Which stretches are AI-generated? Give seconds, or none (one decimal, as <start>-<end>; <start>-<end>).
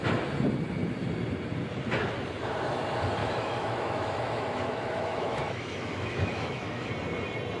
3.2-6.9